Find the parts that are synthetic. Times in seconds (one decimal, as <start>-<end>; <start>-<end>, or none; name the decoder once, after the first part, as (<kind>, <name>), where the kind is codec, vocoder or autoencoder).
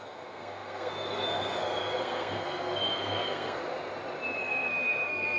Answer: 0.0-3.6 (codec, SNAC); 4.4-5.4